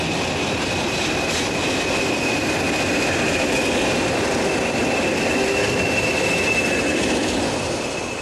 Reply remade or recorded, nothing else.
recorded